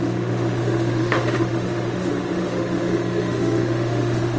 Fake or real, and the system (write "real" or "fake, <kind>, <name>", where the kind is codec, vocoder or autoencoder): fake, autoencoder, DAC-VAE